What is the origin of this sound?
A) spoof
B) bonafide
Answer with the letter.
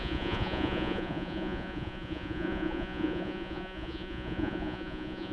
A